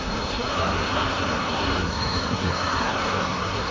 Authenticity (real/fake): fake